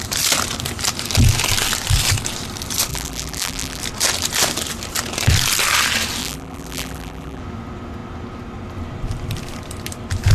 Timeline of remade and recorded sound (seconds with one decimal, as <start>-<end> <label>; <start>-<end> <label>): 0.0-2.9 recorded; 2.9-3.8 remade; 3.8-6.2 recorded; 6.2-7.4 remade; 7.4-10.3 recorded